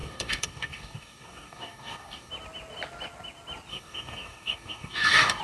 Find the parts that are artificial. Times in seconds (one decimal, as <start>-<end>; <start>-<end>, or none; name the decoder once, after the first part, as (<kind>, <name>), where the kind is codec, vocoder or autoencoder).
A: 0.0-2.3 (codec, DAC); 3.7-5.4